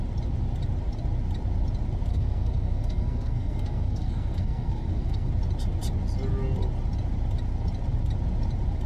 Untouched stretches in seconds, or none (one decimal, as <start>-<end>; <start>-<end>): 0.0-2.1; 5.3-8.9